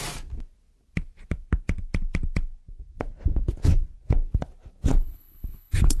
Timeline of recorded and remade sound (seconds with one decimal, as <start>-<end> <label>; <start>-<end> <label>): 0.0-4.9 recorded; 4.9-6.0 remade